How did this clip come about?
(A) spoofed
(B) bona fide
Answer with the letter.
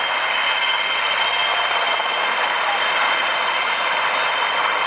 B